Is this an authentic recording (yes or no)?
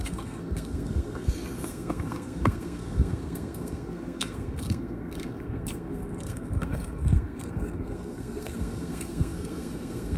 no